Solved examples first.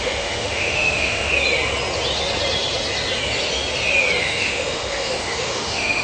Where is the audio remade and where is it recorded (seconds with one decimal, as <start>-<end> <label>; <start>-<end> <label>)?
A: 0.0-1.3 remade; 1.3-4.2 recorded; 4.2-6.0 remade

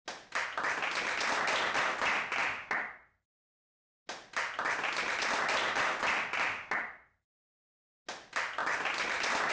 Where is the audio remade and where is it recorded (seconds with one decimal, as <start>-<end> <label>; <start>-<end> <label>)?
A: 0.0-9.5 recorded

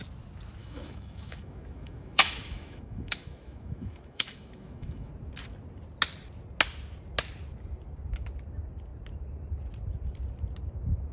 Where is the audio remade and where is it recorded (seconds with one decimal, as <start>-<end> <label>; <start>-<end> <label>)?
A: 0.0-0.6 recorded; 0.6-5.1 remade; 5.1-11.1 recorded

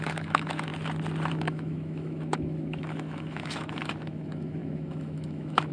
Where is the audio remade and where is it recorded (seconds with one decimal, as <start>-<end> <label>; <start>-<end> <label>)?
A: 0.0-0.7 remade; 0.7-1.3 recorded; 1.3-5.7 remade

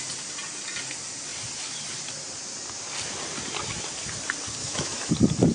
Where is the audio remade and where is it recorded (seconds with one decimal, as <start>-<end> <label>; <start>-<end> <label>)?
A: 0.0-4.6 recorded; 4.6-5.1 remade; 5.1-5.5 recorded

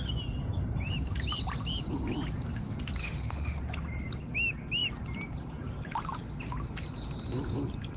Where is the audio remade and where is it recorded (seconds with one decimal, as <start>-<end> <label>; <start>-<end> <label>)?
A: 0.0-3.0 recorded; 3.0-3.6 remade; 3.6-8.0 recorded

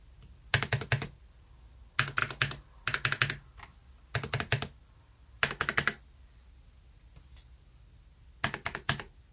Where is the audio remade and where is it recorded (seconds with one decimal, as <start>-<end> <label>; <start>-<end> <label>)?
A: 0.0-9.3 recorded

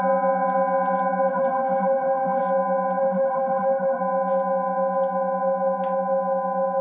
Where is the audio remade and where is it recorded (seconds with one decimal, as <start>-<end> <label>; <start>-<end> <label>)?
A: 0.0-1.3 recorded; 1.3-2.4 remade; 2.4-3.0 recorded; 3.0-4.0 remade; 4.0-6.8 recorded